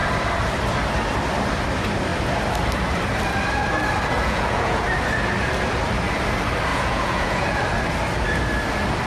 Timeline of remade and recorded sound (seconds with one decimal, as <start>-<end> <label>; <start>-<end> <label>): 0.0-4.1 recorded; 4.1-4.8 remade; 4.8-6.7 recorded; 6.7-7.6 remade; 7.6-9.1 recorded